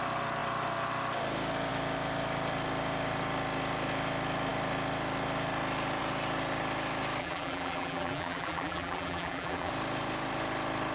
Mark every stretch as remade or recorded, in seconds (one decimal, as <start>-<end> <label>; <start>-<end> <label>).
0.0-7.2 recorded; 7.2-9.7 remade; 9.7-10.9 recorded